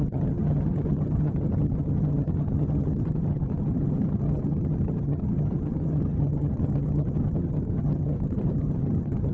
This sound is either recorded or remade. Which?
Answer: remade